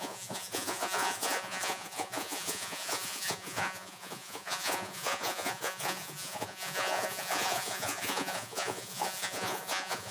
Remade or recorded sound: remade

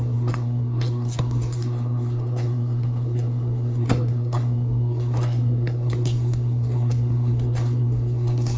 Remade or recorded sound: remade